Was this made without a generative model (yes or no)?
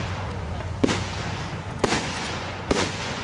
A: no